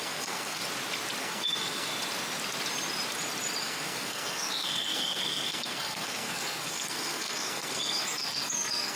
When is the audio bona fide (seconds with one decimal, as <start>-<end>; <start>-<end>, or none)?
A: 0.6-1.2; 1.9-3.6